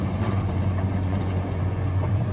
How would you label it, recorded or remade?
remade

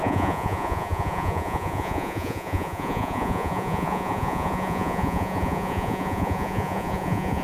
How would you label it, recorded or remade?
remade